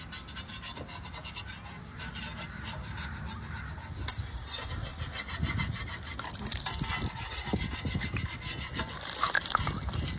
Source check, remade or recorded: recorded